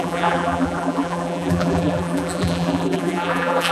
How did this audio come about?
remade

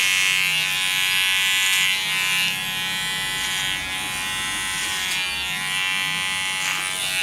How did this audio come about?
recorded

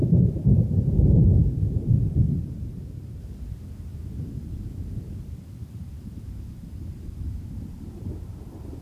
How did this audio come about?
remade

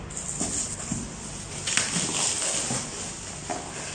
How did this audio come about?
recorded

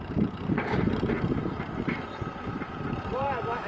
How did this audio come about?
remade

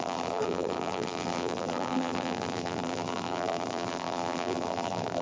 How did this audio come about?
remade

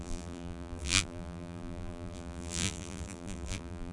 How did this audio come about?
remade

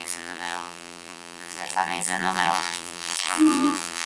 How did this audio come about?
remade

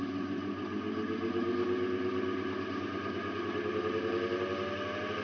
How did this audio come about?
recorded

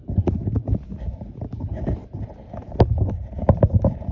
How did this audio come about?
recorded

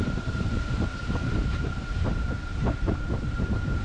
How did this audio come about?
remade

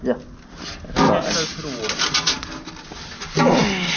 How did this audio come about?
recorded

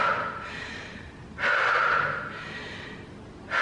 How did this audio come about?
recorded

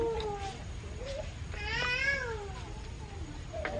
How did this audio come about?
recorded